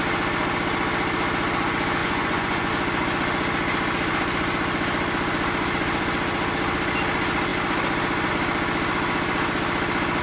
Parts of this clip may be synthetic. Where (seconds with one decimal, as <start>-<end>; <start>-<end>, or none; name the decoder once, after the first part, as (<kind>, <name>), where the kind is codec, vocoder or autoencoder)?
2.0-2.7 (vocoder, Vocos)